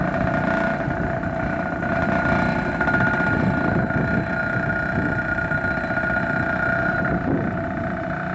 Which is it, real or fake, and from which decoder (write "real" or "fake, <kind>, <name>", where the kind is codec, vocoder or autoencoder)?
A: real